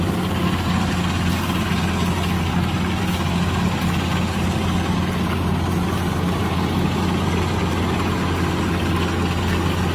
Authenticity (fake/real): real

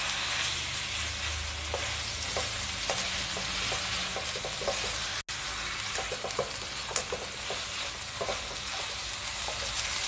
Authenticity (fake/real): real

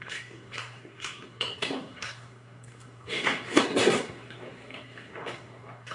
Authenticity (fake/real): fake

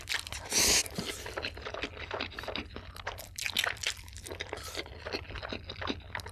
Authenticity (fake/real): real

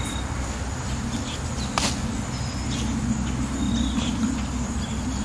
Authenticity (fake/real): real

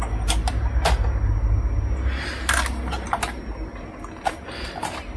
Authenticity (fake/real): real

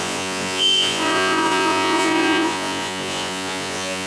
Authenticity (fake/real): fake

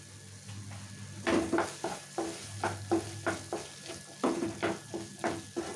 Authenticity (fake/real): real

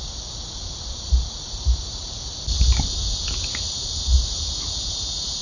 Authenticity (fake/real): real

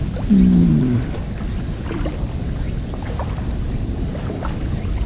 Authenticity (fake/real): real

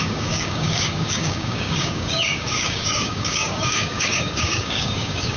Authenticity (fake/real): fake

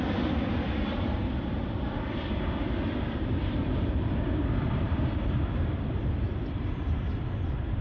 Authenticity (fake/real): fake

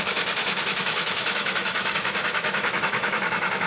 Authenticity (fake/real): fake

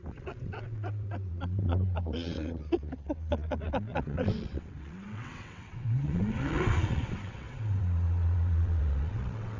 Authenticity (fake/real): fake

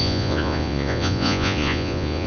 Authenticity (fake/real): fake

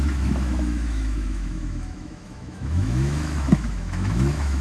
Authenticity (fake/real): fake